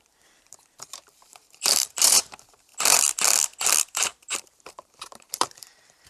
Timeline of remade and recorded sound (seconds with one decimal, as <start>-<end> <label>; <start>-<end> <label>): 0.0-2.7 remade; 2.7-3.8 recorded; 3.8-6.1 remade